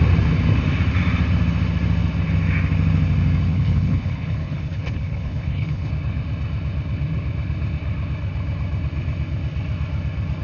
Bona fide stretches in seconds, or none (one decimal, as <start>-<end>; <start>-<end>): 0.0-3.5; 5.9-10.4